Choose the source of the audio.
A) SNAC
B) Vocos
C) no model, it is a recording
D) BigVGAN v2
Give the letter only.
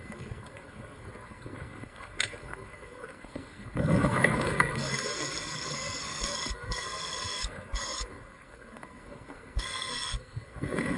A